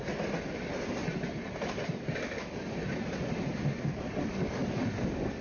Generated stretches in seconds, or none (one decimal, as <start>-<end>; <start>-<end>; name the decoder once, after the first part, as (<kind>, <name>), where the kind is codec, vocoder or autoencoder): none